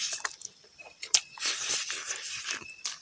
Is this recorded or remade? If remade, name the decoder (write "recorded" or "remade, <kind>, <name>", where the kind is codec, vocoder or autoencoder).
remade, vocoder, BigVGAN v2